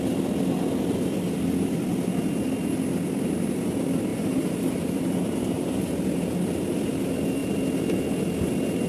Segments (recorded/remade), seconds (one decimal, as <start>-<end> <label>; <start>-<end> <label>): 0.0-4.1 recorded; 4.1-5.8 remade; 5.8-8.9 recorded